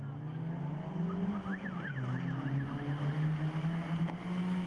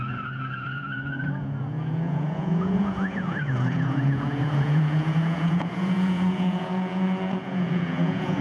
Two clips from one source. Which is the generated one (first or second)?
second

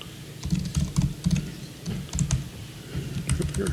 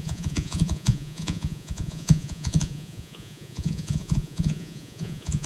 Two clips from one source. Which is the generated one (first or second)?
second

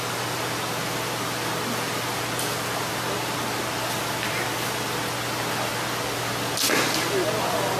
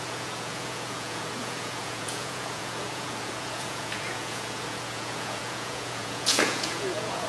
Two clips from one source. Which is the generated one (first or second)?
second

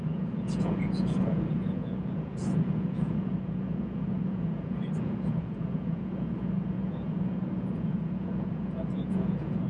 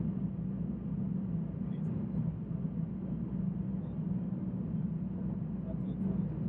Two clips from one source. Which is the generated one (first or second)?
first